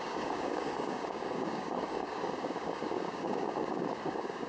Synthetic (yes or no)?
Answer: yes